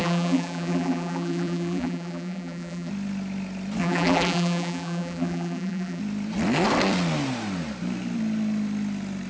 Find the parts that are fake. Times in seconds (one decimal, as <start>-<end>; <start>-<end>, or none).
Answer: 0.0-2.9; 3.8-6.0